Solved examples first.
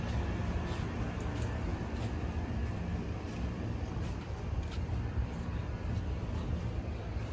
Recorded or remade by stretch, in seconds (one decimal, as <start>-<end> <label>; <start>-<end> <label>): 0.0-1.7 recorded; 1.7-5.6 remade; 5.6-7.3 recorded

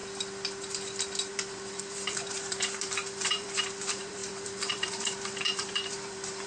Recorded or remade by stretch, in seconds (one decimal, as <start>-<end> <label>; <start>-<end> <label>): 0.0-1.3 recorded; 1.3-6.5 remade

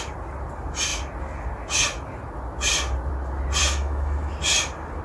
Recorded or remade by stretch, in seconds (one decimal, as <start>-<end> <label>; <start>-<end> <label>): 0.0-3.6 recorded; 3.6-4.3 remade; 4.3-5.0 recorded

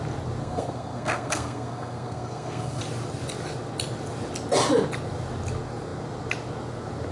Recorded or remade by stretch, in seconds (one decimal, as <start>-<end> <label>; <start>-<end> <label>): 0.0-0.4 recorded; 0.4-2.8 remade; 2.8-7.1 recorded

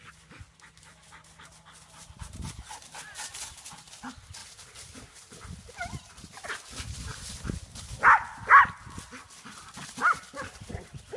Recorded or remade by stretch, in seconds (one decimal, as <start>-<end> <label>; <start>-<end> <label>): 0.0-4.4 recorded; 4.4-5.7 remade; 5.7-11.2 recorded